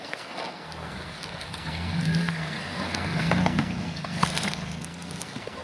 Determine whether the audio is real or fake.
fake